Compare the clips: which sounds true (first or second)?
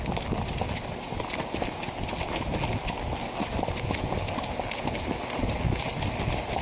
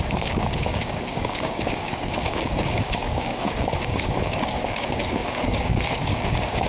first